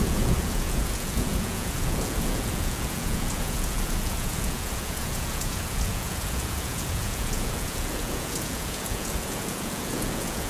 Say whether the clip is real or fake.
fake